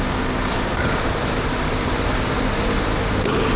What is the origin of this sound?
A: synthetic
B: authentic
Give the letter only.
B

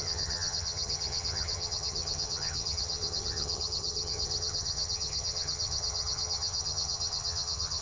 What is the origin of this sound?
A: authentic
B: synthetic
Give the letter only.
B